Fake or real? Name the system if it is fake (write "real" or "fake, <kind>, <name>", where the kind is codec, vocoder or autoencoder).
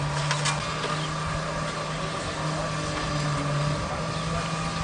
real